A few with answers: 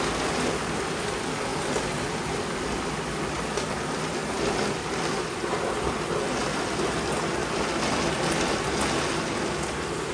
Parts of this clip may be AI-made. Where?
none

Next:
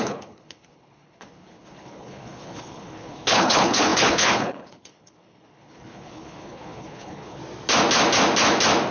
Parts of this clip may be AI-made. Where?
0.0-7.4 (codec, HILCodec)

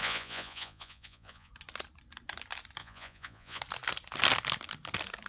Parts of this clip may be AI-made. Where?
0.0-1.5 (vocoder, Vocos); 2.8-3.6

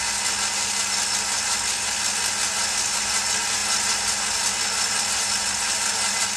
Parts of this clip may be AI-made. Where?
none

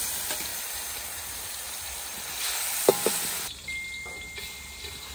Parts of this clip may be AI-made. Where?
0.5-1.8 (vocoder, BigVGAN v2)

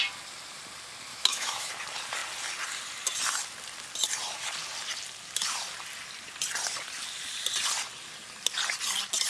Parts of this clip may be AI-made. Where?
1.1-1.7 (autoencoder, DAC-VAE)